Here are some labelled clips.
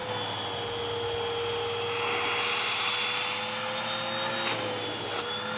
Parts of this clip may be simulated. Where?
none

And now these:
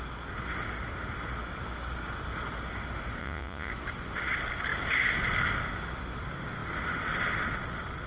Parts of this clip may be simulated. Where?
3.2-3.7 (vocoder, Vocos)

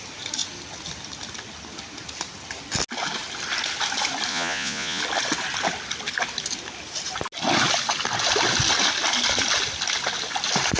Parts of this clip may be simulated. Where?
4.3-5.0 (vocoder, Vocos)

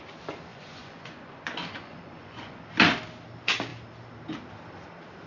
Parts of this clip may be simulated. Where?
0.5-2.6 (vocoder, Vocos)

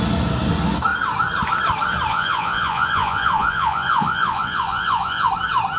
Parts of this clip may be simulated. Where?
2.1-5.3 (vocoder, Vocos)

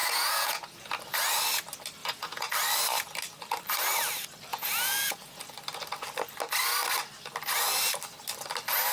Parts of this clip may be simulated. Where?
0.0-0.9 (vocoder, Vocos); 2.0-2.5; 4.5-5.4

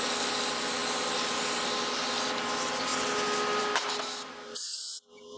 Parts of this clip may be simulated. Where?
none

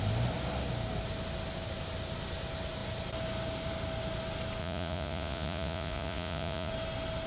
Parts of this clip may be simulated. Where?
4.6-6.7 (vocoder, Vocos)